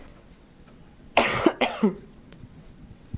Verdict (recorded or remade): remade